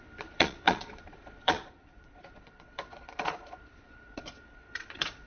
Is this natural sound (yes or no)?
no